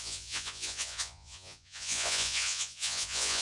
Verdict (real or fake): fake